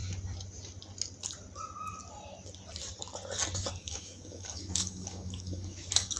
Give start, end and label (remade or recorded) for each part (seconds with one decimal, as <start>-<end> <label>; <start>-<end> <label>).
0.0-3.7 recorded; 3.7-6.2 remade